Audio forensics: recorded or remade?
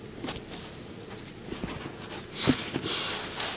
recorded